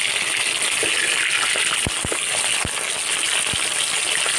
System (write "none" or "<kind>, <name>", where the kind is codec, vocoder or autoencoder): none